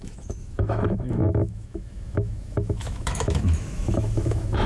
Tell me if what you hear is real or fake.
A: fake